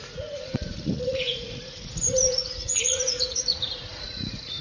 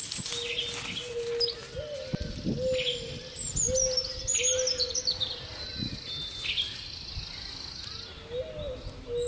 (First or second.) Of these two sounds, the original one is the second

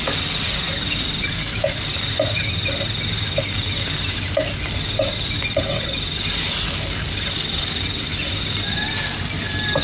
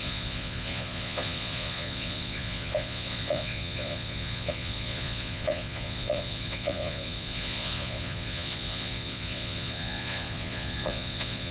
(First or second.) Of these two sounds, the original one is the first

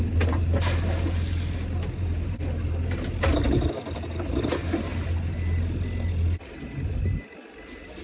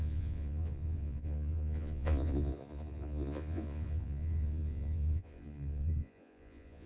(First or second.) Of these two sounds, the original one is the first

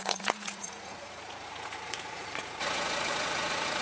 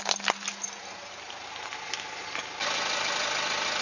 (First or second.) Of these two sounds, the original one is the second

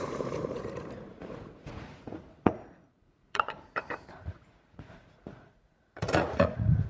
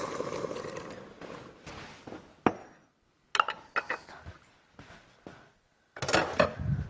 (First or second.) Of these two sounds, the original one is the second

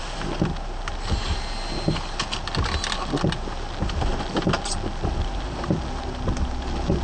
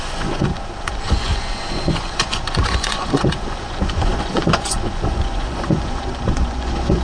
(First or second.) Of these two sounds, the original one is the first